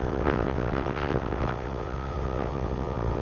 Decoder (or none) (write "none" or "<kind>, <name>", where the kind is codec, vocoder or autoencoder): vocoder, WaveNeXt